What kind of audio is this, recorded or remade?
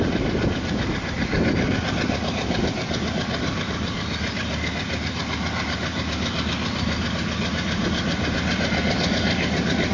recorded